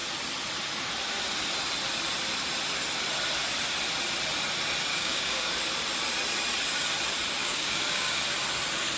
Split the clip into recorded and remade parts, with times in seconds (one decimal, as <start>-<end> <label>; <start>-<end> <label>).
0.0-4.9 recorded; 4.9-5.5 remade; 5.5-7.4 recorded; 7.4-8.2 remade; 8.2-9.0 recorded